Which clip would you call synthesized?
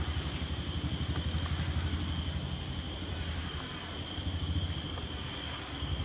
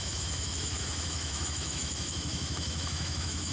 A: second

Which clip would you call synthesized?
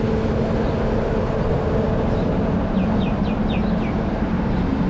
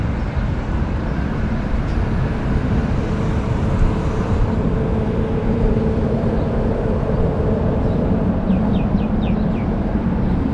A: second